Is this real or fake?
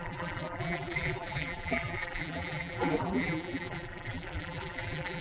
fake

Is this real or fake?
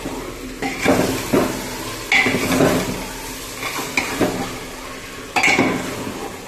real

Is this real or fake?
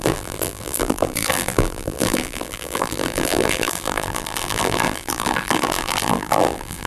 fake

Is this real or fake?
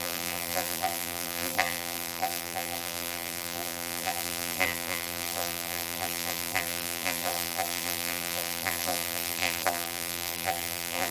fake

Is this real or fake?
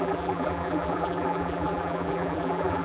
fake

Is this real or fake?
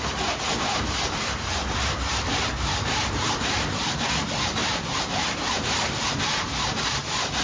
fake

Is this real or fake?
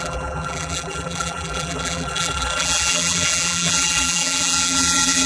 fake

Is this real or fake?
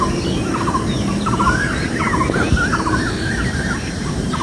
fake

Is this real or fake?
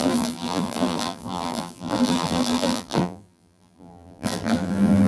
fake